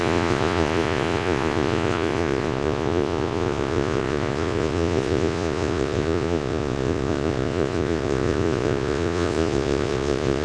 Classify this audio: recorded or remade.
remade